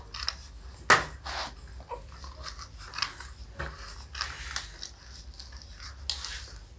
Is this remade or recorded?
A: recorded